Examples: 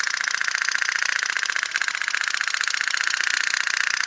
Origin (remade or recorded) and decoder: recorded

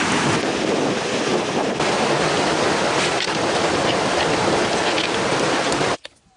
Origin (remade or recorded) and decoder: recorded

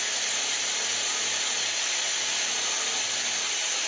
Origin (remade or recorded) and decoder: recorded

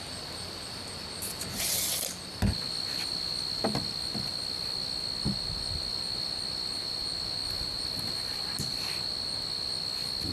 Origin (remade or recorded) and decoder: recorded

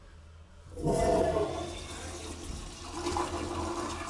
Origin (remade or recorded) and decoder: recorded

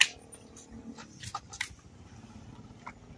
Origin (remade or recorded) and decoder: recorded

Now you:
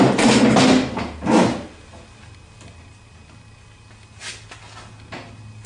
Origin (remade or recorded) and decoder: recorded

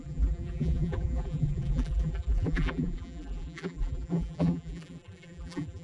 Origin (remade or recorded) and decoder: remade, vocoder, BigVGAN v2